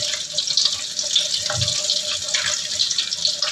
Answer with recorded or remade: recorded